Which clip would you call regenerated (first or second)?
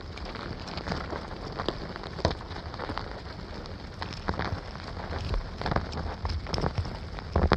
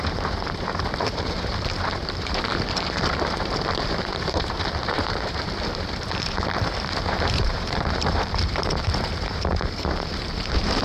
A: second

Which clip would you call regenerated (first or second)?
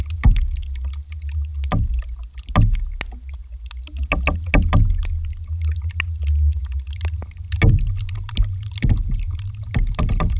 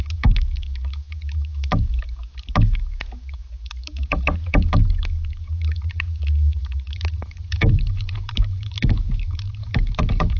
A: second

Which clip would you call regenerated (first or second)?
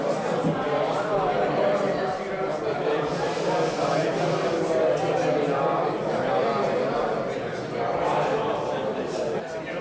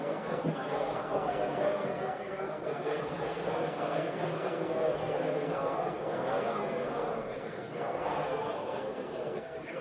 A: second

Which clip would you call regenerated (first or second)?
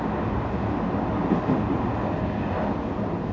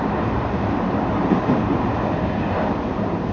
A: second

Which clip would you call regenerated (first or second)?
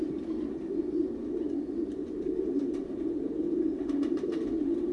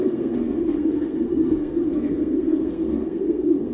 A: second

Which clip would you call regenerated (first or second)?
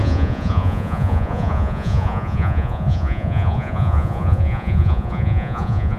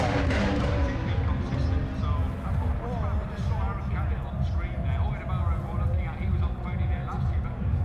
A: first